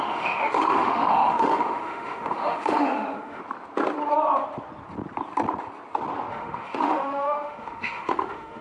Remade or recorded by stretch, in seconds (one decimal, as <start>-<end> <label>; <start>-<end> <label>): 0.0-3.4 remade; 3.4-6.3 recorded; 6.3-8.6 remade